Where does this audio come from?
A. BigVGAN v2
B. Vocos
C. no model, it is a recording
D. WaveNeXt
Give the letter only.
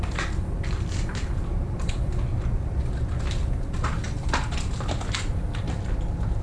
C